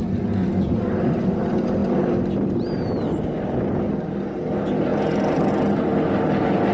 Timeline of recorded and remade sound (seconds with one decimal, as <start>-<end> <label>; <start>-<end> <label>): 0.0-1.4 remade; 1.4-1.8 recorded; 1.8-4.2 remade; 4.2-4.9 recorded; 4.9-5.5 remade; 5.5-6.7 recorded